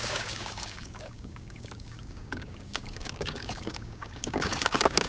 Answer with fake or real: fake